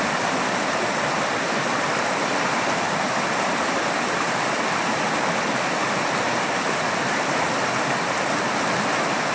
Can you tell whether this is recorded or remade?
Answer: recorded